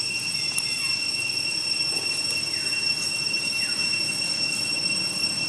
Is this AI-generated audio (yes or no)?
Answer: no